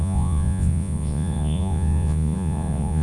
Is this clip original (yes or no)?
no